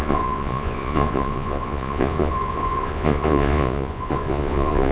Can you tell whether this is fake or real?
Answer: fake